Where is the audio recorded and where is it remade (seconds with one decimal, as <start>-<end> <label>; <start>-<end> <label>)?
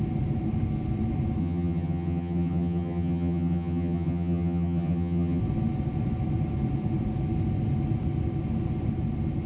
0.0-1.4 recorded; 1.4-5.4 remade; 5.4-9.5 recorded